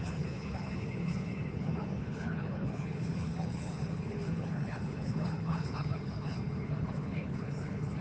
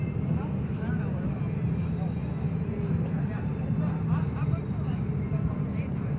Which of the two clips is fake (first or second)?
first